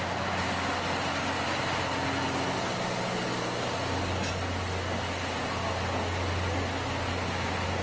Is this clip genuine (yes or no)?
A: yes